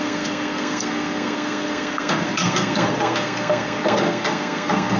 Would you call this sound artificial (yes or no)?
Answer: yes